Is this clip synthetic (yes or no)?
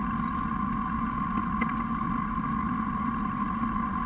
no